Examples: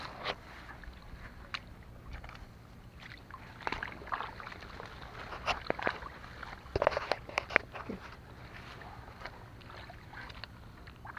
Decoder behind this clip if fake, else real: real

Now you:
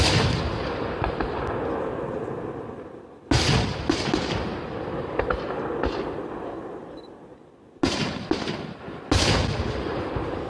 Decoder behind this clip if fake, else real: real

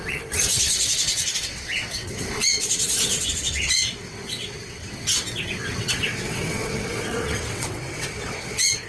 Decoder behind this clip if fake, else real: fake, vocoder, WaveNeXt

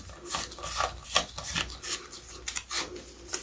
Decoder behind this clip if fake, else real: real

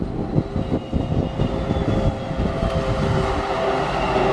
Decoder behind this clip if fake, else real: real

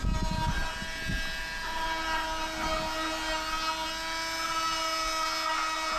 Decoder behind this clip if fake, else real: real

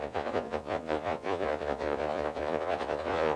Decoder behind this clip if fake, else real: fake, vocoder, Vocos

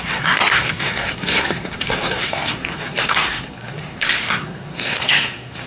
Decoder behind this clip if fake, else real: fake, codec, SNAC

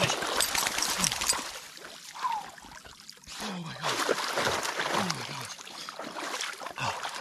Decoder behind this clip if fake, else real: real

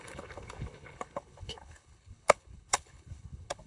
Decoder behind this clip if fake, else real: fake, codec, HILCodec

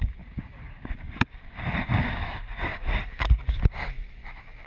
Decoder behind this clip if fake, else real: fake, codec, DAC